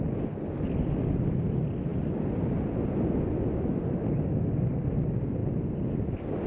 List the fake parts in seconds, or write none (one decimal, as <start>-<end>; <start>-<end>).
none